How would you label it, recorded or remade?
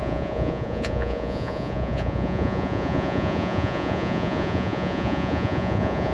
remade